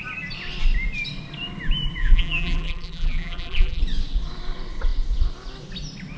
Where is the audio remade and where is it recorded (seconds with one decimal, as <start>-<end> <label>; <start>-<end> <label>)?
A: 0.0-2.0 recorded; 2.0-3.8 remade; 3.8-6.2 recorded